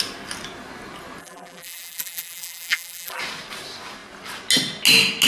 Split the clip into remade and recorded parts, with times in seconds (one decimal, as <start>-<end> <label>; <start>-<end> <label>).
0.0-1.2 recorded; 1.2-3.2 remade; 3.2-5.3 recorded